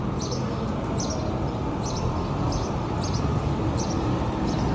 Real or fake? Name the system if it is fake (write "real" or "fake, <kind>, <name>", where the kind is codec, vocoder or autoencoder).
real